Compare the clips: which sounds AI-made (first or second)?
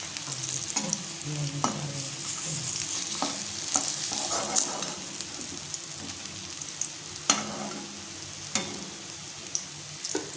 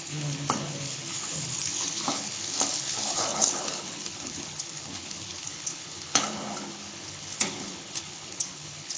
second